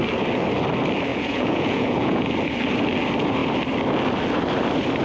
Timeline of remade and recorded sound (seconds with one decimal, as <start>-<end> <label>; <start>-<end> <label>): 0.0-1.1 recorded; 1.1-2.3 remade; 2.3-5.0 recorded